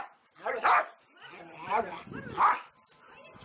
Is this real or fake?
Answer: real